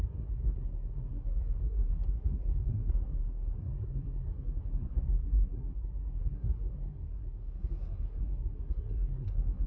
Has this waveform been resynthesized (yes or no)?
yes